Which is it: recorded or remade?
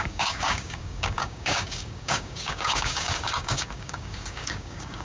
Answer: remade